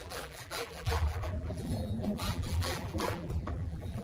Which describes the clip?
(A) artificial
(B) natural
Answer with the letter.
A